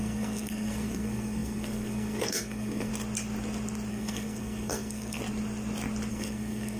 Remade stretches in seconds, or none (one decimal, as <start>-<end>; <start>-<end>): 0.0-2.9; 3.9-5.2; 6.1-6.8

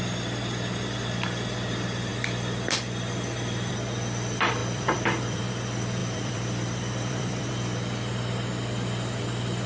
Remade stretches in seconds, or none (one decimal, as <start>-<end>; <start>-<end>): 4.6-5.5; 6.0-7.5

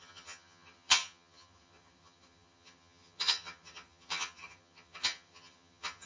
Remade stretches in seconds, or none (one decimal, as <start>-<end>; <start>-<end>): 0.0-6.1